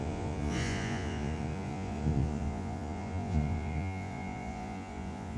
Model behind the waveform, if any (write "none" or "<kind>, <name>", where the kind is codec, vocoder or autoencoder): vocoder, Vocos